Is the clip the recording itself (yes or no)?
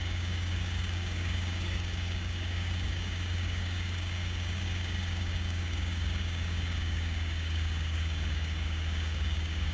no